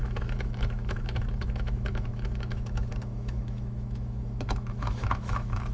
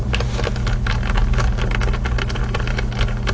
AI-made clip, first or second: first